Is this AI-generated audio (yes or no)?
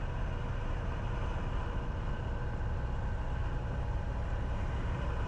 no